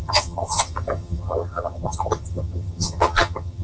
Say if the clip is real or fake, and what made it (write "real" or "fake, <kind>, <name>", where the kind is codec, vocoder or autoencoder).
fake, vocoder, HiFi-GAN